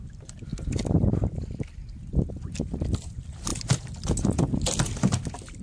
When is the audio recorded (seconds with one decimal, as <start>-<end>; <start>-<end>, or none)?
0.0-5.6

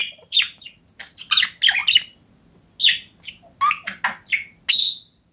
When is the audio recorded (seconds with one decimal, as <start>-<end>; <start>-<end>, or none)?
0.7-5.3

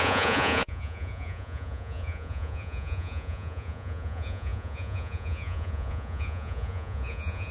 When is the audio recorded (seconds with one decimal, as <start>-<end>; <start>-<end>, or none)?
none

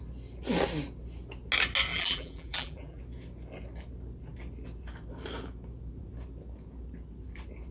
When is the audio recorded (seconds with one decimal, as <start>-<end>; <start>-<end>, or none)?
0.0-1.9; 3.0-7.7

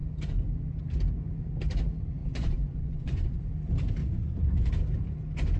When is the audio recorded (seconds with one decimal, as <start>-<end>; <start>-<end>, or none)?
0.0-2.2; 3.4-4.0; 4.7-5.6

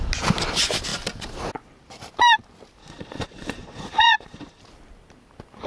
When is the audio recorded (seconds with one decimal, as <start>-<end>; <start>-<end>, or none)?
0.0-2.8; 4.6-5.7

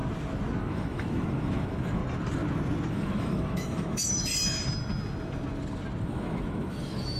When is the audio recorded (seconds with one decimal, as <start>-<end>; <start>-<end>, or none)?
0.0-0.6; 2.0-2.9; 4.3-6.0

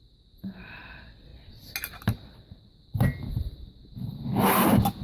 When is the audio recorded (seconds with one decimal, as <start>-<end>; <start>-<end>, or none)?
0.0-5.0